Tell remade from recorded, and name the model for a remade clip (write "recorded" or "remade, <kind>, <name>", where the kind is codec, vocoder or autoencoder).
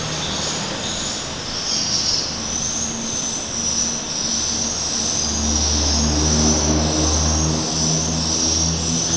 recorded